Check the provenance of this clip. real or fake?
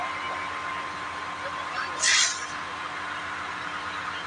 real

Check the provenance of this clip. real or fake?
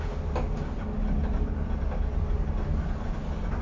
real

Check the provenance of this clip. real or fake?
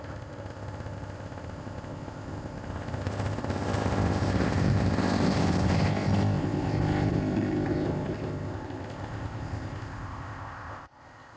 fake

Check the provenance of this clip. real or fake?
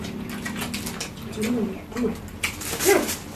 real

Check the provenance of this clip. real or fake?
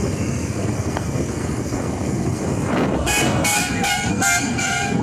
fake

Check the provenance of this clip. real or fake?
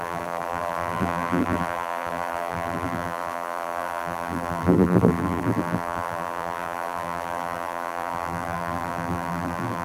fake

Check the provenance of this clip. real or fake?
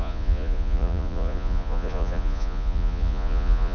fake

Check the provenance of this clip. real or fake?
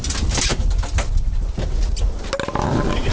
real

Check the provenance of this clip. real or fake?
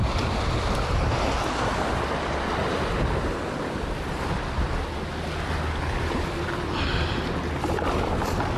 real